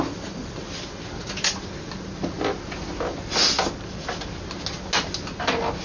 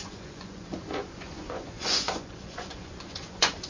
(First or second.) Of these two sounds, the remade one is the second